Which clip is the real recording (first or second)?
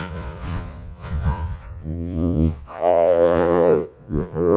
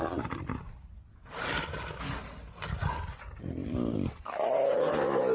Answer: second